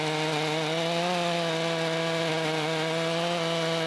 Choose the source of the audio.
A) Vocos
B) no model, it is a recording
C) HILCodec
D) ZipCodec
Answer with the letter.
B